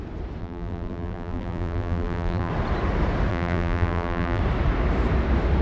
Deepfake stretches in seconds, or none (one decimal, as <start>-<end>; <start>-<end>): 0.4-2.5; 3.3-4.4